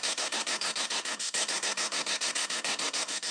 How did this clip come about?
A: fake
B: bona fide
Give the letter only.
A